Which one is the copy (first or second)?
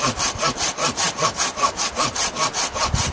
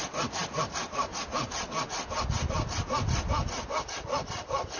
first